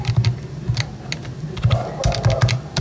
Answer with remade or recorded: recorded